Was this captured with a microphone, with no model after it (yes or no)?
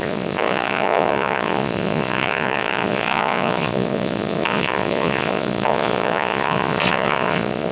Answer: no